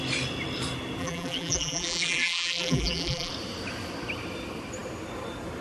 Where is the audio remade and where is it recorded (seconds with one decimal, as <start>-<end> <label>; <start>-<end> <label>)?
0.0-1.0 recorded; 1.0-3.3 remade; 3.3-5.6 recorded